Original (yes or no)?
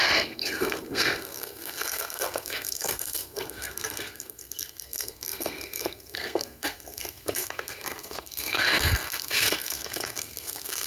no